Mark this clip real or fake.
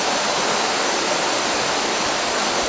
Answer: real